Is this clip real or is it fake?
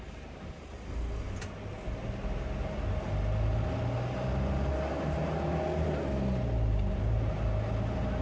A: real